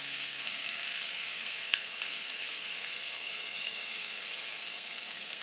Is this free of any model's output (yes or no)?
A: no